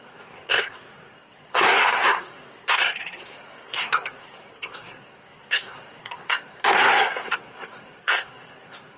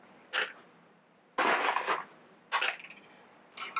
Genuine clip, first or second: second